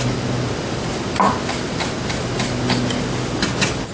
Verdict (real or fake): real